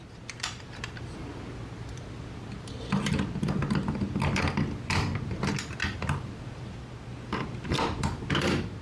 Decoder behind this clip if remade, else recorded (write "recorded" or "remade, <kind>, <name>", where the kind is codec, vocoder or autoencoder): recorded